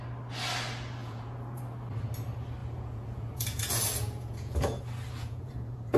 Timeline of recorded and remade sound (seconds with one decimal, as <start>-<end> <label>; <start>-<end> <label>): 0.0-1.0 recorded; 1.0-1.6 remade; 1.6-2.6 recorded; 2.6-4.8 remade; 4.8-5.2 recorded; 5.2-6.0 remade

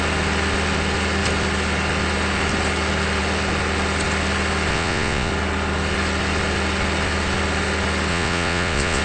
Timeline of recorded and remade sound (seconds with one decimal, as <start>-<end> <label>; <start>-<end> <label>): 0.0-4.7 recorded; 4.7-5.3 remade; 5.3-8.1 recorded; 8.1-9.0 remade

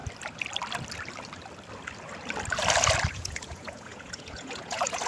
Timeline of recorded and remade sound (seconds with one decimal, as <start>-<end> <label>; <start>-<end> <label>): 0.0-3.1 recorded; 3.1-5.1 remade

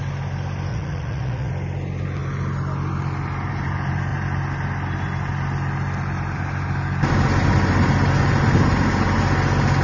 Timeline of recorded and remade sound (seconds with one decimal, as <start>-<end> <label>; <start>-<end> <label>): 0.0-0.7 recorded; 0.7-1.5 remade; 1.5-9.8 recorded

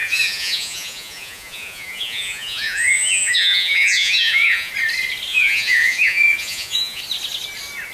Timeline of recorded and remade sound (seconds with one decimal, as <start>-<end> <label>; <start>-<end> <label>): 0.0-4.7 remade; 4.7-5.3 recorded; 5.3-7.0 remade; 7.0-7.9 recorded